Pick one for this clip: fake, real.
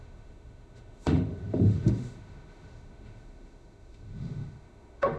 fake